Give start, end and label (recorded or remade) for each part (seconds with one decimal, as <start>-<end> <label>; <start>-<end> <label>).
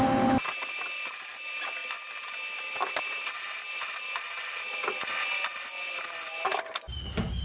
0.0-7.4 recorded